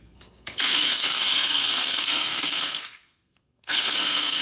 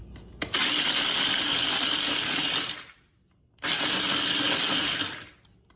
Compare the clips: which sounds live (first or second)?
second